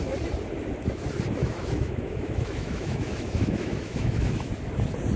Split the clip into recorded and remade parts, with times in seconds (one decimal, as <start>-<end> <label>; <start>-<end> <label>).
0.0-1.4 recorded; 1.4-4.5 remade; 4.5-5.2 recorded